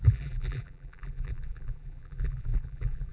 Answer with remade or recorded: remade